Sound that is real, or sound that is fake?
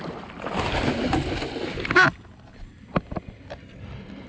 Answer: real